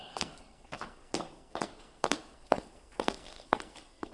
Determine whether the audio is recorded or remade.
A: remade